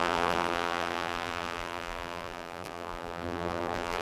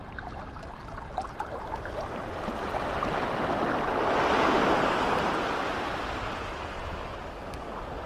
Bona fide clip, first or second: second